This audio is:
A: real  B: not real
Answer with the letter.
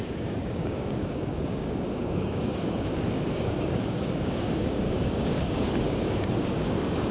B